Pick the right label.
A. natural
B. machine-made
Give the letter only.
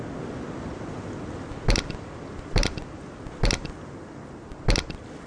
A